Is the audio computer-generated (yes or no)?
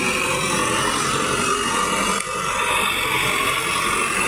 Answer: no